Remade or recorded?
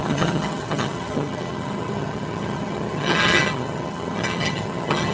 remade